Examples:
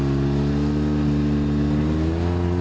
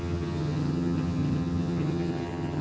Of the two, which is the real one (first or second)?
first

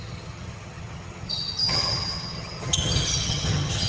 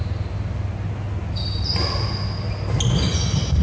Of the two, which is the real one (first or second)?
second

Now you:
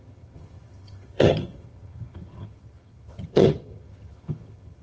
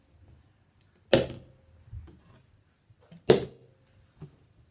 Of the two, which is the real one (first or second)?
second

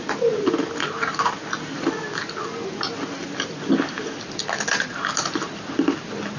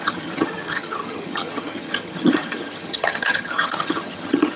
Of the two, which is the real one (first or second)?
first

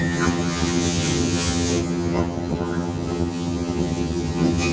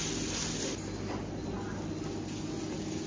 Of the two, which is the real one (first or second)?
second